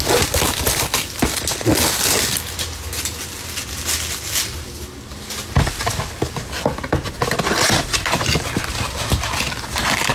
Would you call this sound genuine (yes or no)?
yes